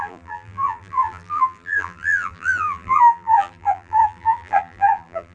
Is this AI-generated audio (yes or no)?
yes